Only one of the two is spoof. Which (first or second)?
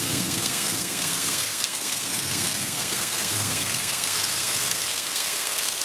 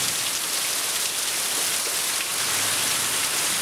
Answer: first